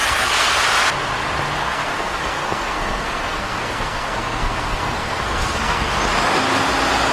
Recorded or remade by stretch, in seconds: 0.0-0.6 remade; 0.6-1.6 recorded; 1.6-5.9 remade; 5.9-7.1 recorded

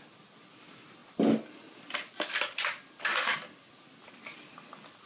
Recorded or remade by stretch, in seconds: 0.0-5.1 recorded

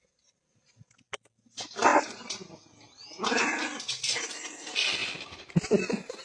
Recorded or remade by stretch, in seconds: 0.0-6.2 recorded